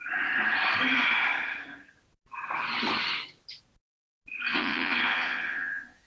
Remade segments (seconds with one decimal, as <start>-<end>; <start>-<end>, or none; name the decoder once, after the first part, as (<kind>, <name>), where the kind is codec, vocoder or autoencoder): 4.5-6.1 (vocoder, Vocos)